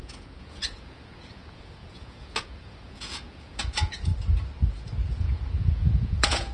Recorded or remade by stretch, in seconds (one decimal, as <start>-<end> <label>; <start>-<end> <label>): 0.0-4.1 remade; 4.1-5.1 recorded; 5.1-6.5 remade